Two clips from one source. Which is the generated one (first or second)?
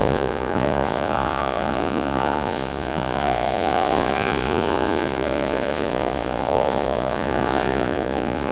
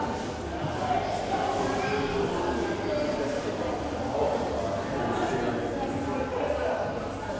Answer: first